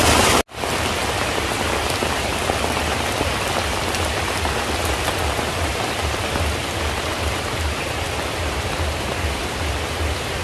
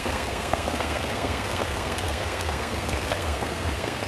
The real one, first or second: first